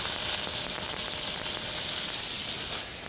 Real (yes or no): yes